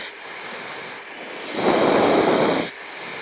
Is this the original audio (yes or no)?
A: yes